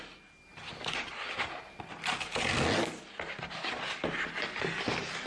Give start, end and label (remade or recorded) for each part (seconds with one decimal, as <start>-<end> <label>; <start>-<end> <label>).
0.0-5.3 recorded